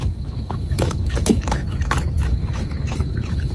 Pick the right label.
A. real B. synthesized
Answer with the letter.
B